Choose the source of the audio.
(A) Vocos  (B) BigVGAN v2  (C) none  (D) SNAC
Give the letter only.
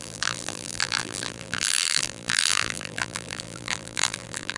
B